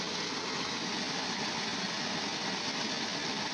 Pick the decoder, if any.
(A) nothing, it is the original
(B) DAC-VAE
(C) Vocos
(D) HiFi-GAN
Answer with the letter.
A